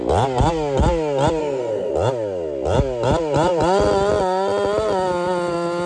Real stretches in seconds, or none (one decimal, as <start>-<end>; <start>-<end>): 0.0-1.4; 1.9-5.9